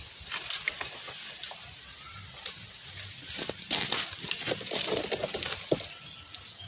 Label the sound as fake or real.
real